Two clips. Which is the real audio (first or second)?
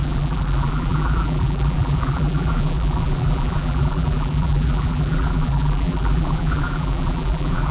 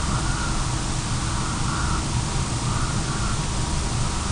second